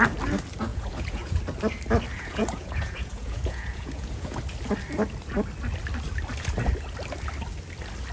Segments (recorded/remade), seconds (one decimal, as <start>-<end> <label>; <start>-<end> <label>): 0.0-0.7 recorded; 0.7-1.4 remade; 1.4-2.1 recorded; 2.1-4.4 remade; 4.4-8.1 recorded